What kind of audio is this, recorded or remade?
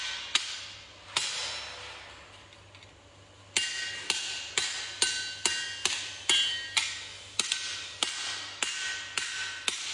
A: recorded